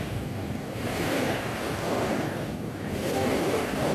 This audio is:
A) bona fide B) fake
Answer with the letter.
B